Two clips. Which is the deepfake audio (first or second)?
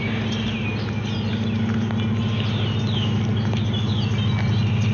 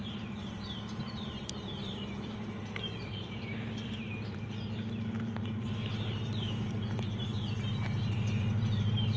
second